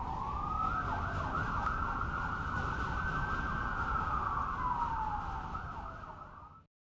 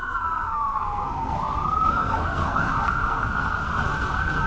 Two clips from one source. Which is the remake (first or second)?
second